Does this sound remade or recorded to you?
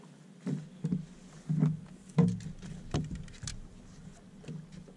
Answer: recorded